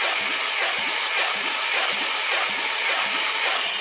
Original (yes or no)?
yes